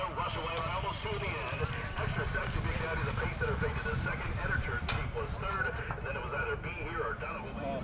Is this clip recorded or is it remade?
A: recorded